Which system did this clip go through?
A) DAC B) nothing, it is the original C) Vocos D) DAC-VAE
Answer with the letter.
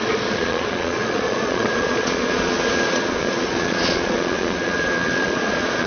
C